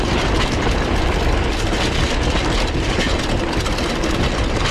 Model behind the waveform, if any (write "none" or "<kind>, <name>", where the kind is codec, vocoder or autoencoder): none